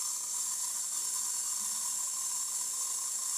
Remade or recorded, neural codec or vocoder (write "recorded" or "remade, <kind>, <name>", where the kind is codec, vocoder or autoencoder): recorded